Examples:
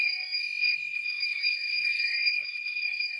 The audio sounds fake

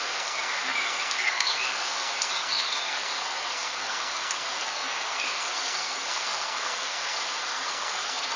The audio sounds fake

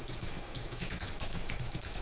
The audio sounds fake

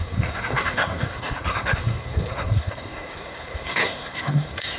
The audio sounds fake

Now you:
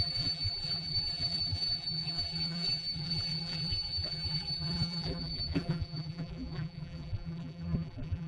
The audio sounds fake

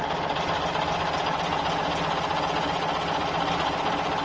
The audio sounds real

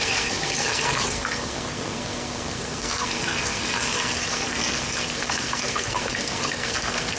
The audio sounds fake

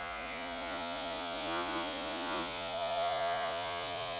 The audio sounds fake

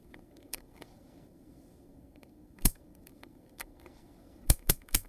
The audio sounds fake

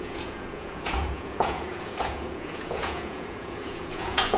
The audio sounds fake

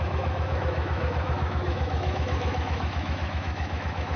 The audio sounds fake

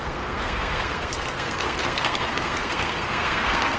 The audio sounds fake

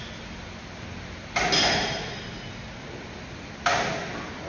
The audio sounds real